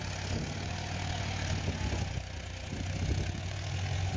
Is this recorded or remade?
remade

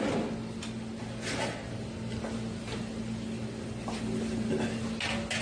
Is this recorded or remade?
recorded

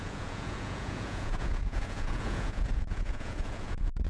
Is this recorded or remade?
remade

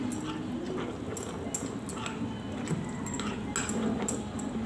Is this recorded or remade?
recorded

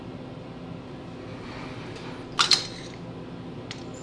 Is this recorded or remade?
recorded